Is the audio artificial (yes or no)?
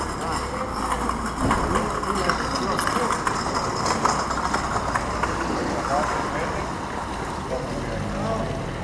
no